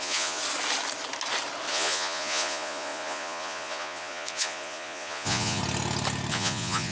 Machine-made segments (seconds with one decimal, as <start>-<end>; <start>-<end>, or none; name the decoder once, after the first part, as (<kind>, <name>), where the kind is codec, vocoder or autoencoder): 0.0-0.4 (vocoder, Vocos); 1.7-5.6; 6.3-6.9